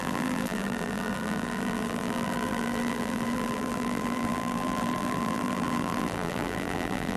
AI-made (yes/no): yes